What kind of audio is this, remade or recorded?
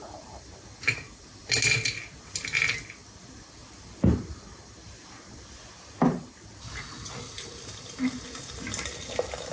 recorded